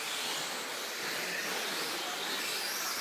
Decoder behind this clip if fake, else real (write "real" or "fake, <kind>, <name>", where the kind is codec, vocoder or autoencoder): real